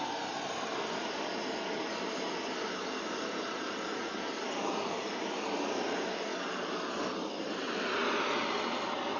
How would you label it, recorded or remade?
recorded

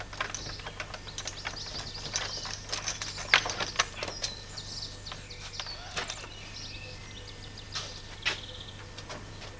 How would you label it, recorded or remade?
recorded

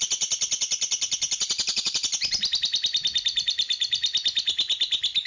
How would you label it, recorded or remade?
recorded